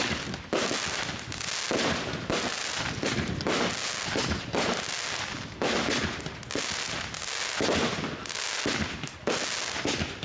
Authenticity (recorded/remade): recorded